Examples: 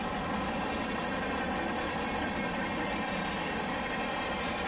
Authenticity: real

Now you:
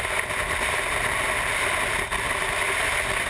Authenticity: real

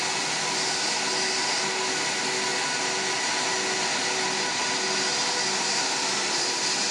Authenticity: real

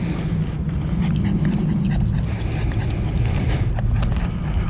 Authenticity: real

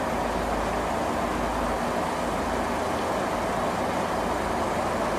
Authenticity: real